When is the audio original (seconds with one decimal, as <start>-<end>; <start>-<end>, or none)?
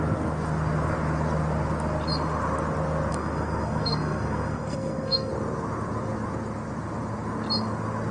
0.0-3.1; 5.3-8.1